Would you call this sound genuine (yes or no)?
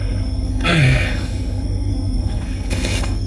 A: no